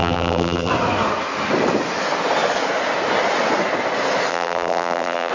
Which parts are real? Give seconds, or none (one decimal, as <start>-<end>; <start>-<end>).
0.7-4.3